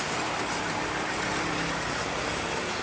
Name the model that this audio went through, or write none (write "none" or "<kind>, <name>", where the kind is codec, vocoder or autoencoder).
none